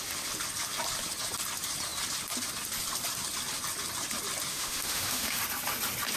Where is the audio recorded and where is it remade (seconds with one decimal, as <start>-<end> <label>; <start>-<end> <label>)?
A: 0.0-4.5 recorded; 4.5-5.4 remade; 5.4-6.2 recorded